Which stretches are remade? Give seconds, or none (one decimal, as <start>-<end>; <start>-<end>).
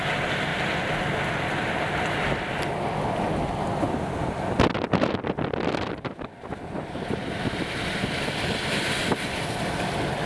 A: none